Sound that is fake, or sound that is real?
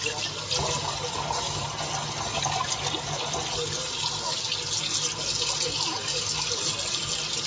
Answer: real